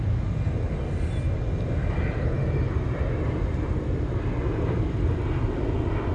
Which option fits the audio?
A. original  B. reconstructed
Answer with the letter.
A